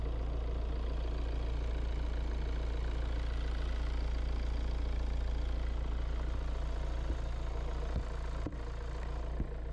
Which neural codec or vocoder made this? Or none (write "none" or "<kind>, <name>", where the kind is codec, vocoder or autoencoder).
none